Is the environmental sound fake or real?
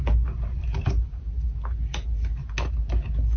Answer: real